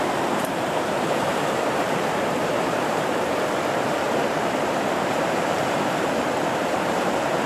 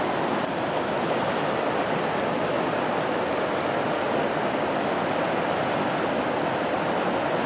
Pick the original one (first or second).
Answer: second